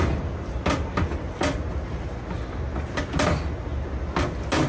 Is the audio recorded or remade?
recorded